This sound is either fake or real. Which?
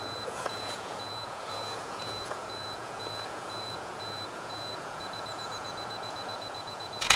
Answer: fake